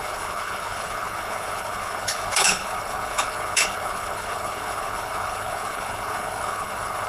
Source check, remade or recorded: remade